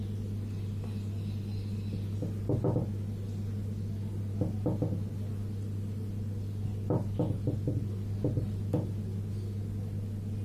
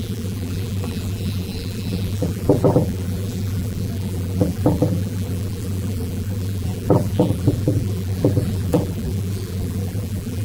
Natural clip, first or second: first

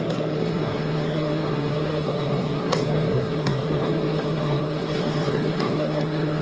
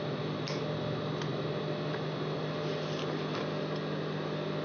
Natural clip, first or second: second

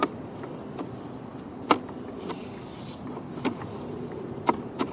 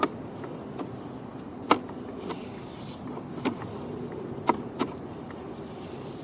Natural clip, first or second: second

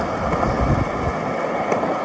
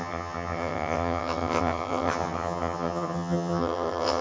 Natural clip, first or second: first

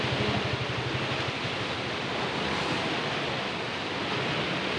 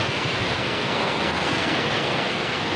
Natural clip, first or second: first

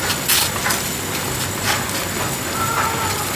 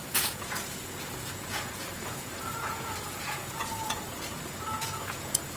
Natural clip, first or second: first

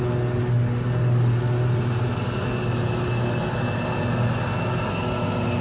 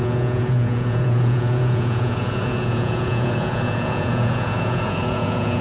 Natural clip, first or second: first